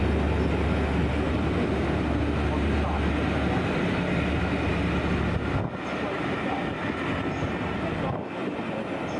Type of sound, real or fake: real